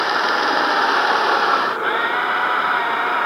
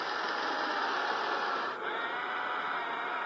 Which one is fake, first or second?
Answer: first